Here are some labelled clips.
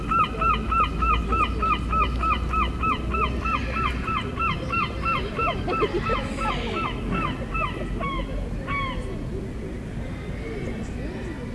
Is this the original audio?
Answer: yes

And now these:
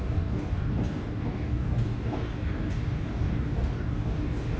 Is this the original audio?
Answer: no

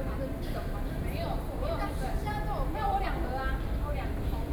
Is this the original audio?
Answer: yes